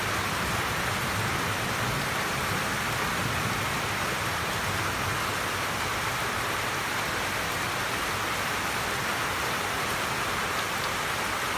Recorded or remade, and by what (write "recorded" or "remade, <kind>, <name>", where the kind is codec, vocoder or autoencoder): recorded